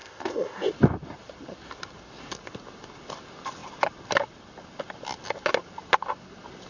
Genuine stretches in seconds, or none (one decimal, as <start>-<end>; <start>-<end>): 0.7-6.7